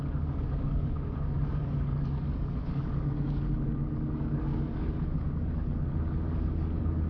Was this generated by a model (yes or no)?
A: yes